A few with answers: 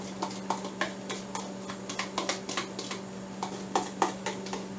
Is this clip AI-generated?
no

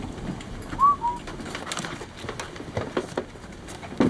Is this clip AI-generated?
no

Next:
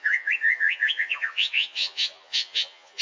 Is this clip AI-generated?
yes